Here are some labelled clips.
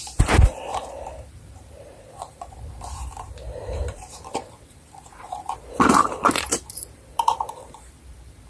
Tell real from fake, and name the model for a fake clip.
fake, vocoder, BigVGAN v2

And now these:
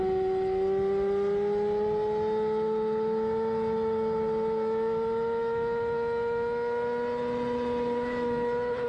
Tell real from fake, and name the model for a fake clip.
real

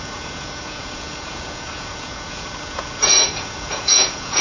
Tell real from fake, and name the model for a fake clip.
fake, vocoder, Vocos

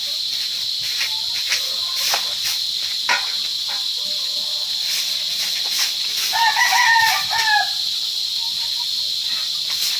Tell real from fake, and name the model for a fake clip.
real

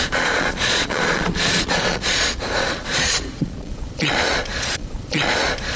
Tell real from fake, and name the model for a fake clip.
fake, vocoder, Vocos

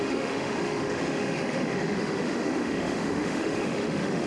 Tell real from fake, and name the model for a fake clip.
fake, autoencoder, DAC-VAE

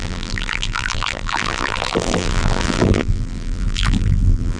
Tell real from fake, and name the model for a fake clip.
fake, vocoder, BigVGAN v2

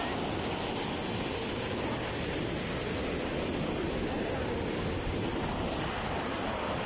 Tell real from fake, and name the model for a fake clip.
real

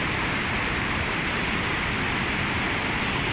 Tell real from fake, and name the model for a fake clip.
real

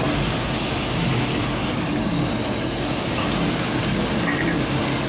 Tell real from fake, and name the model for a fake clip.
real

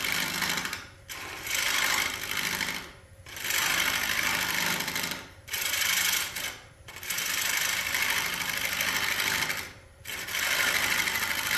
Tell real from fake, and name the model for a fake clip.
fake, vocoder, BigVGAN v2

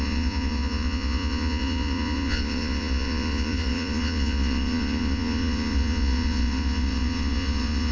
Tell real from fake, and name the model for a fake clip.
fake, vocoder, Vocos